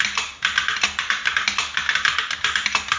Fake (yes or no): no